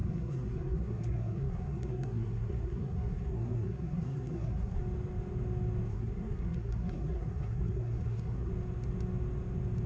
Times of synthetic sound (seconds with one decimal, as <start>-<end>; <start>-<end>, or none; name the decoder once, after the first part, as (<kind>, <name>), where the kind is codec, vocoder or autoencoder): 0.0-4.8 (codec, SNAC); 5.9-8.5